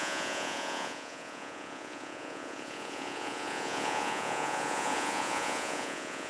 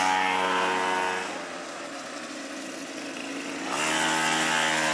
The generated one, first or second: first